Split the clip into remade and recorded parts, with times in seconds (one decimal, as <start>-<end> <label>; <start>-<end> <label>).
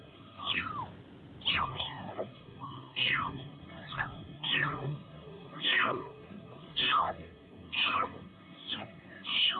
0.0-0.7 remade; 0.7-1.5 recorded; 1.5-9.6 remade